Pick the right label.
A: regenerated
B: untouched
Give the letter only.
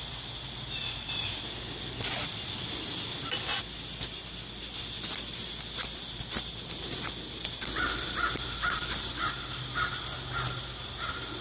B